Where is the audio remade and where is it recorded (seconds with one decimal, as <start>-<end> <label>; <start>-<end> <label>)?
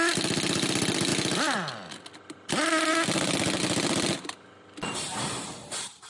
0.0-6.1 recorded